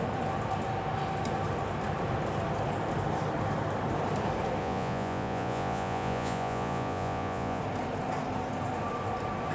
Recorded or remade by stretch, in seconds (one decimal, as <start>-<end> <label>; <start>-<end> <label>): 0.0-4.6 recorded; 4.6-7.6 remade; 7.6-9.5 recorded